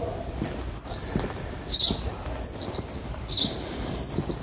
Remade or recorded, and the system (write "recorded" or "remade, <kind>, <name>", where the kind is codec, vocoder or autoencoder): recorded